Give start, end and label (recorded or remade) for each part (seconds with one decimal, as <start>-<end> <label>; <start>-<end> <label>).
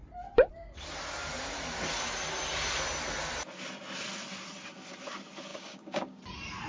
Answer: 0.0-5.5 recorded; 5.5-6.2 remade; 6.2-6.7 recorded